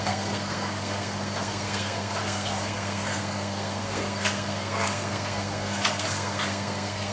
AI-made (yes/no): yes